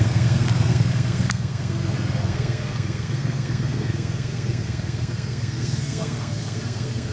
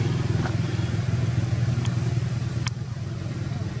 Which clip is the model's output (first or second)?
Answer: first